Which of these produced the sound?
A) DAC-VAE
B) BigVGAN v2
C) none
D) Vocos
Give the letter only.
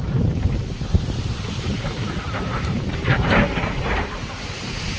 B